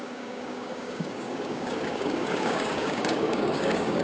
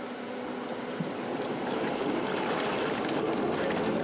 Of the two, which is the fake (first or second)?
first